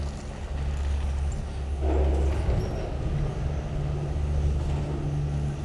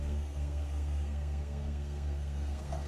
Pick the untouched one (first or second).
first